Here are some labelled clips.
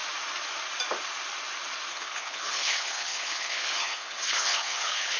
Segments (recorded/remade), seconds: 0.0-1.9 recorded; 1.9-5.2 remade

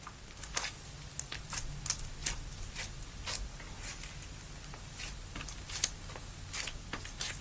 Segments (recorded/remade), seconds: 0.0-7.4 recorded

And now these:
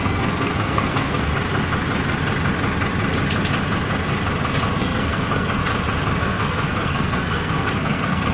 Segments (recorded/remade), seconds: 0.0-1.3 remade; 1.3-4.8 recorded; 4.8-5.6 remade; 5.6-6.2 recorded; 6.2-8.3 remade